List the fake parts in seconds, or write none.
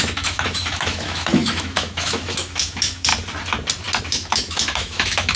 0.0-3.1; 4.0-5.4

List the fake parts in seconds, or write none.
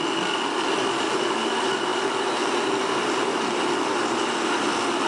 none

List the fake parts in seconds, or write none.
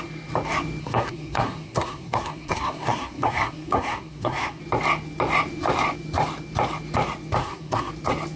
0.8-4.6; 7.4-7.9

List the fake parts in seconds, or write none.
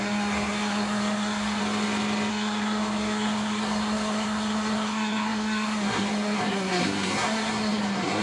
0.0-1.6; 2.3-8.2